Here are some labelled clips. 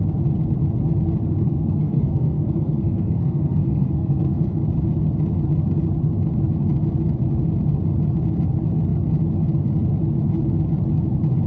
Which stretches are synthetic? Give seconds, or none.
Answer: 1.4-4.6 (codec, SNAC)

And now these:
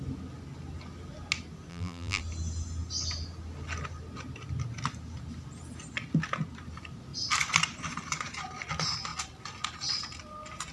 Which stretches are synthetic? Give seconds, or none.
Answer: 1.7-2.2 (vocoder, BigVGAN v2)

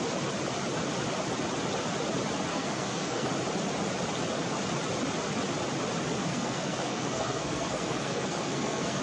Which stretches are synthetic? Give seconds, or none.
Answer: 2.5-3.3 (codec, SNAC); 6.3-9.0

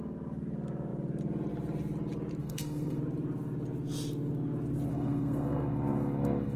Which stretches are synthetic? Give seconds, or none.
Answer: 2.4-3.0 (codec, SNAC); 4.9-6.6

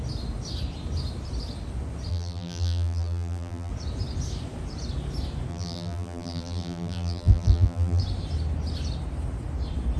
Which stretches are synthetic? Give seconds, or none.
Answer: 2.1-3.7 (vocoder, BigVGAN v2); 5.5-8.0

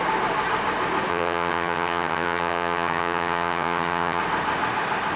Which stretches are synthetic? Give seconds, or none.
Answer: 1.1-4.2 (vocoder, HiFi-GAN)